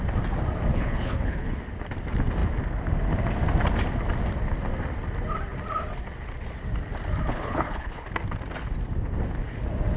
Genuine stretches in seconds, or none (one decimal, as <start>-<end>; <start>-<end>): 0.0-0.7; 1.6-7.3; 8.1-10.0